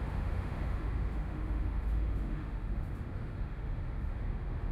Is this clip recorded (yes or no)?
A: no